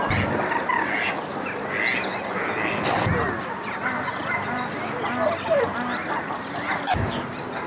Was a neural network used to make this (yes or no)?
no